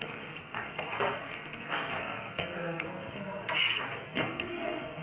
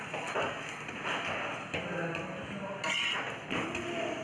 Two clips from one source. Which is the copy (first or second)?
first